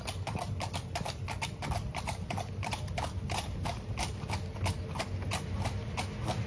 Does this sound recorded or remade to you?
recorded